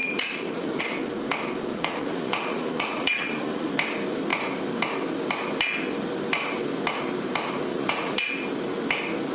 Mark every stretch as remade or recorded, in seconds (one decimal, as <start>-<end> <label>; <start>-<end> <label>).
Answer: 0.0-0.8 remade; 0.8-1.7 recorded; 1.7-3.7 remade; 3.7-7.7 recorded; 7.7-8.3 remade; 8.3-9.3 recorded